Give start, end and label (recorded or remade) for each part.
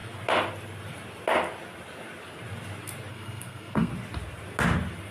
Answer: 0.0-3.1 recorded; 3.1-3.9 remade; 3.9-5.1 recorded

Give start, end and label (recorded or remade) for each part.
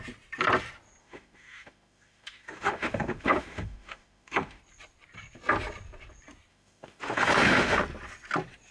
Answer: 0.0-1.0 recorded; 1.0-4.6 remade; 4.6-6.5 recorded; 6.5-7.8 remade; 7.8-8.7 recorded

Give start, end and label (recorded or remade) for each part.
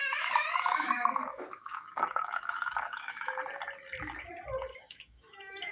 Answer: 0.0-3.4 remade; 3.4-4.7 recorded; 4.7-5.7 remade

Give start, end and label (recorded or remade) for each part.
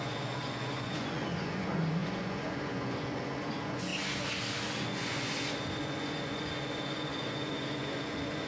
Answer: 0.0-3.9 remade; 3.9-4.6 recorded; 4.6-8.5 remade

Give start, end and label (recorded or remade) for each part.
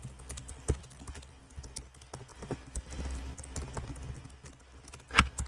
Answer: 0.0-2.3 recorded; 2.3-3.0 remade; 3.0-5.5 recorded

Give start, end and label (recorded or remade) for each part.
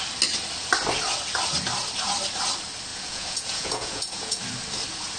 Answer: 0.0-2.9 recorded; 2.9-4.4 remade; 4.4-5.2 recorded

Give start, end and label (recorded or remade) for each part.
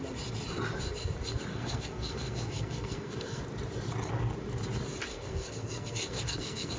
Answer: 0.0-1.5 recorded; 1.5-3.4 remade; 3.4-5.1 recorded; 5.1-6.8 remade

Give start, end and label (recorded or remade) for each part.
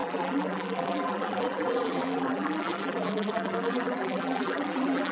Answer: 0.0-5.1 remade